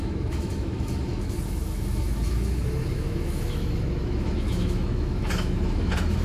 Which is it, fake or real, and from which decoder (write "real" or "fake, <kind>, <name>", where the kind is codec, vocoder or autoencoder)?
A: fake, autoencoder, DAC-VAE